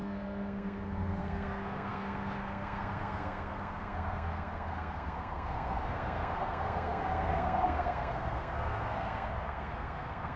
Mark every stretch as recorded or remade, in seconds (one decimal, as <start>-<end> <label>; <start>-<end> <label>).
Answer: 0.0-10.4 remade